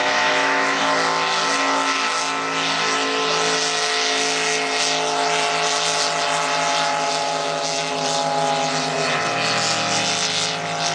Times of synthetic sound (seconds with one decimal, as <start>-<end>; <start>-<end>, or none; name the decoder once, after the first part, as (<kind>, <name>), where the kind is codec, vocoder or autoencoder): 0.0-0.8 (autoencoder, DAC-VAE); 7.4-7.9